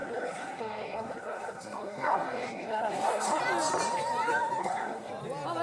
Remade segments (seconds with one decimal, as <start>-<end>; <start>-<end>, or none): 0.0-3.4; 4.6-5.1